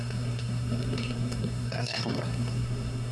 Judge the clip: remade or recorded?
remade